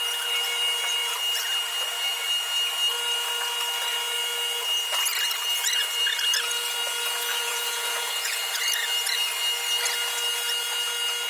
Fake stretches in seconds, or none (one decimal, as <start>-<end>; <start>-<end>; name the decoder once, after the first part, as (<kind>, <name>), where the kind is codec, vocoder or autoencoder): 7.3-8.6 (vocoder, Vocos)